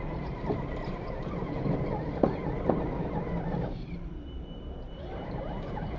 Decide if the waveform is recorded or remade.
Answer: remade